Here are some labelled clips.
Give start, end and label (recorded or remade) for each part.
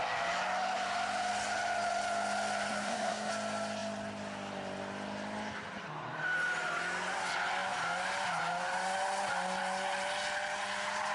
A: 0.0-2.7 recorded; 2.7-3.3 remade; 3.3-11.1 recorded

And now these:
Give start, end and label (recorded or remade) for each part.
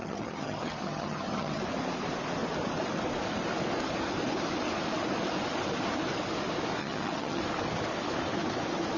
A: 0.0-1.6 remade; 1.6-6.8 recorded; 6.8-7.4 remade; 7.4-9.0 recorded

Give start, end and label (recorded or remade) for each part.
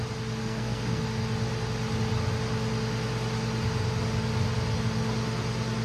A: 0.0-0.4 recorded; 0.4-1.0 remade; 1.0-5.8 recorded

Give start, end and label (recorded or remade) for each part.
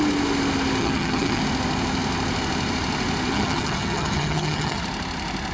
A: 0.0-0.8 recorded; 0.8-1.4 remade; 1.4-3.3 recorded; 3.3-4.8 remade; 4.8-5.5 recorded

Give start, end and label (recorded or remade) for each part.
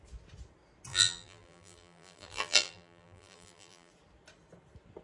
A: 0.0-0.9 recorded; 0.9-3.9 remade; 3.9-5.0 recorded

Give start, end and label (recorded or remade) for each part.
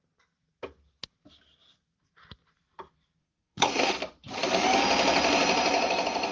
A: 0.0-3.2 recorded; 3.2-3.9 remade; 3.9-6.3 recorded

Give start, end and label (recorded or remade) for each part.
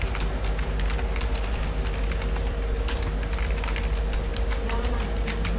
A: 0.0-4.3 recorded; 4.3-4.9 remade; 4.9-5.6 recorded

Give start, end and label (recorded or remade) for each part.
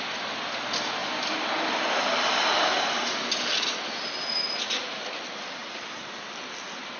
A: 0.0-7.0 recorded